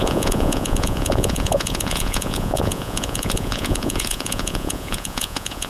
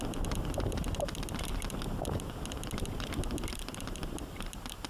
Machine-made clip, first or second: first